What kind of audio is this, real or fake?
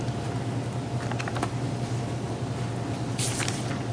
real